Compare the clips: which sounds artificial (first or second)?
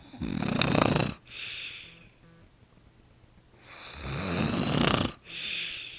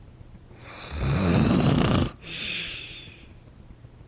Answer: second